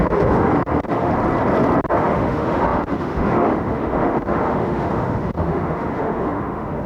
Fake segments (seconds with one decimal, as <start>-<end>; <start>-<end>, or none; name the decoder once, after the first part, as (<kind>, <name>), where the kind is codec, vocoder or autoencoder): 0.0-1.1 (autoencoder, DAC-VAE); 1.9-6.9